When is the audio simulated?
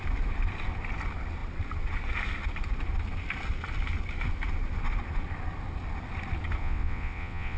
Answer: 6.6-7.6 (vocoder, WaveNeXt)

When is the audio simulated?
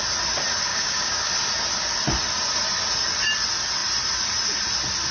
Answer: 0.7-1.3 (codec, DAC)